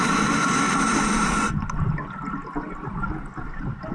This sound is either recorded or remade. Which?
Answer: recorded